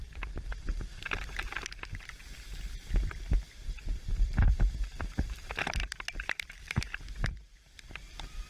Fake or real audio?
fake